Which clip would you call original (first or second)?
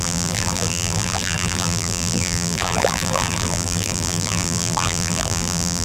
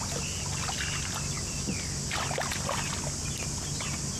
second